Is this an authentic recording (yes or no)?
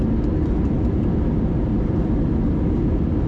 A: yes